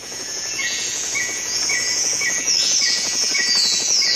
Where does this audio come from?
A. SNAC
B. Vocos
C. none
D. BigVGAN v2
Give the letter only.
B